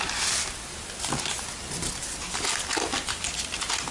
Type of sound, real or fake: real